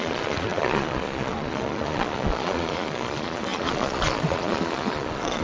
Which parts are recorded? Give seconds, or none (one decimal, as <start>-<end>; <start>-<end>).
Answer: none